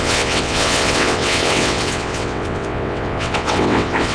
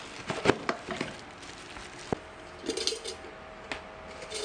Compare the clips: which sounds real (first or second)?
second